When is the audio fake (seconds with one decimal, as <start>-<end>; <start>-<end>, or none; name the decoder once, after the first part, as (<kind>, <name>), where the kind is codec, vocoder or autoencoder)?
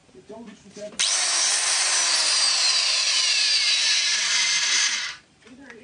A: 0.0-1.0 (vocoder, BigVGAN v2); 2.2-5.8